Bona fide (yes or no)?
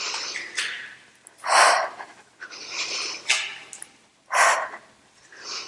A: yes